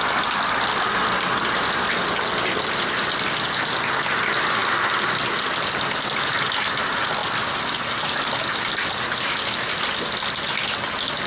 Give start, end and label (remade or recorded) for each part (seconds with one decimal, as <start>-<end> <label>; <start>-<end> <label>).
0.0-11.3 recorded